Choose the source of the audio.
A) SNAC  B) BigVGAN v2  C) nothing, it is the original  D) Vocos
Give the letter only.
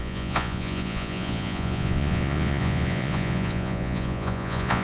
D